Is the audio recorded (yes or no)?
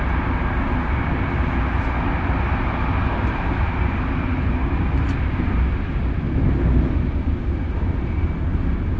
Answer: yes